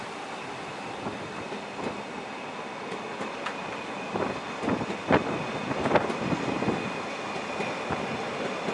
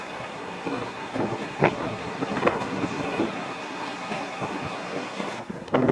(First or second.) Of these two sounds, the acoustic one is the first